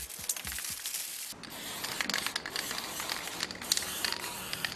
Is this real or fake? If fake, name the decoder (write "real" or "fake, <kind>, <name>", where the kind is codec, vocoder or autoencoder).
real